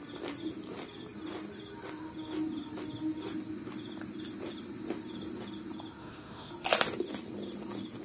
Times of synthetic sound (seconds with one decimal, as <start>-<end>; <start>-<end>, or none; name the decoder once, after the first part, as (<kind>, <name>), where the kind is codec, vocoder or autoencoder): 6.0-6.5 (autoencoder, DAC-VAE)